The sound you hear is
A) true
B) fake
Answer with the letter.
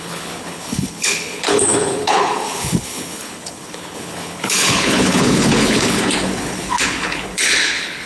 B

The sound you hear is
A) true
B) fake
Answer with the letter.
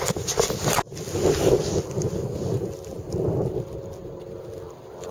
A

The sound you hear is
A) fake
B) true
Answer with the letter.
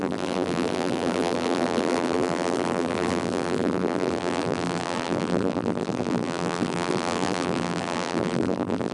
A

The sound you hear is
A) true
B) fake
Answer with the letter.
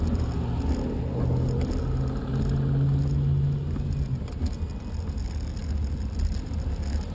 A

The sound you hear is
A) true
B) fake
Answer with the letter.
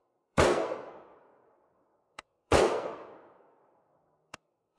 B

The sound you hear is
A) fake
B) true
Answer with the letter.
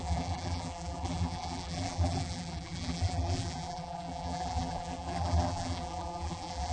A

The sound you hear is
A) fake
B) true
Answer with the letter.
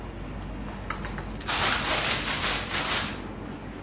B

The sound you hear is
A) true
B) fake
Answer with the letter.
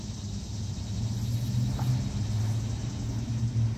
A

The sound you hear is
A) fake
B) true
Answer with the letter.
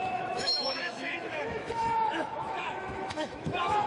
A